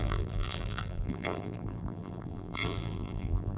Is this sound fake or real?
fake